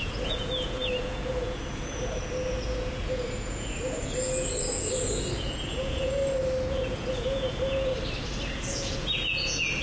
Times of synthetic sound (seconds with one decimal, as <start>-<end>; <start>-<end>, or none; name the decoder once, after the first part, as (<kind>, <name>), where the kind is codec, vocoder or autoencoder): 0.0-6.2 (vocoder, Vocos); 6.7-7.9; 8.5-9.8